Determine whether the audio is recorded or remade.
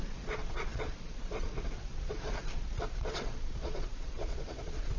remade